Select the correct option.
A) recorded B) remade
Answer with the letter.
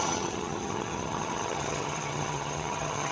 B